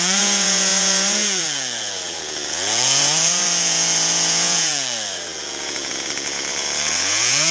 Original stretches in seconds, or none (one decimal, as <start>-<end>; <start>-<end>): none